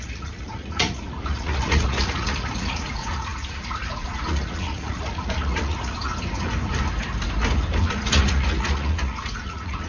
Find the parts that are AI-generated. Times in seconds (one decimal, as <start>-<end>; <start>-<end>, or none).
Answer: 0.0-6.1; 7.8-9.9